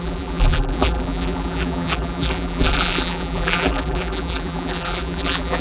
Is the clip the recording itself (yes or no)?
no